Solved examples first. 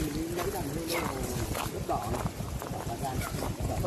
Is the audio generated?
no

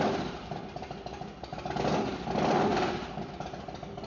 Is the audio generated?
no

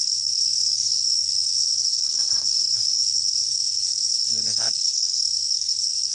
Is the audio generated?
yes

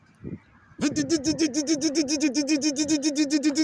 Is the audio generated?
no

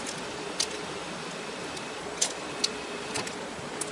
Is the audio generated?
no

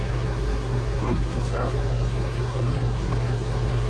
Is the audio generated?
yes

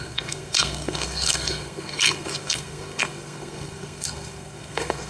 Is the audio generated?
yes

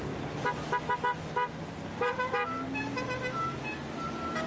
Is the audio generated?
no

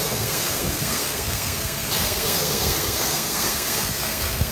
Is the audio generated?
yes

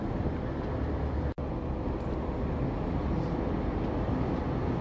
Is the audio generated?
no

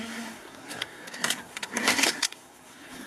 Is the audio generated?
yes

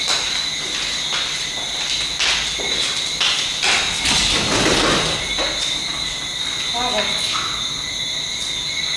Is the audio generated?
no